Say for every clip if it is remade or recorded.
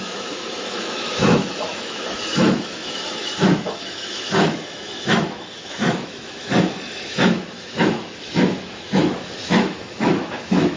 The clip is remade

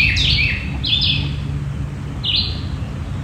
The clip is recorded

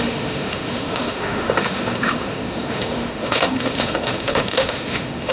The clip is remade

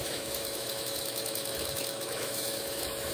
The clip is remade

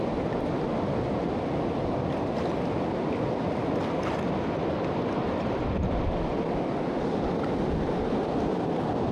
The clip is recorded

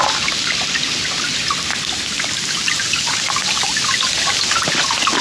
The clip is recorded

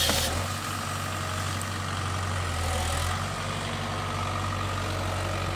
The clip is recorded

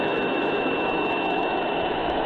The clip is remade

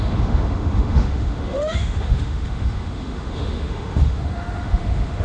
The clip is remade